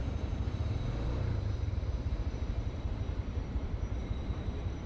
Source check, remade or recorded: remade